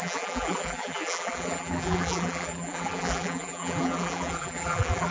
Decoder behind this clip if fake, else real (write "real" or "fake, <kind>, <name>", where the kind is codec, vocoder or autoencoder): fake, vocoder, BigVGAN v2